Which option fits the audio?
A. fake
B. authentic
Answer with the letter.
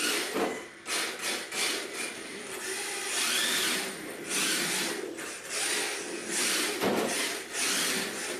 B